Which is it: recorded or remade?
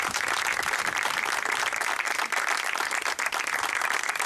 recorded